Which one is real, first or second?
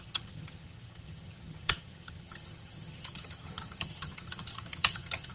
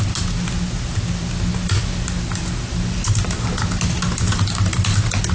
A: second